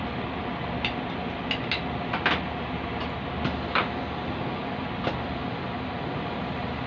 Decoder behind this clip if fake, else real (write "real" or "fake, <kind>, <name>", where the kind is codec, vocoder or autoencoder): real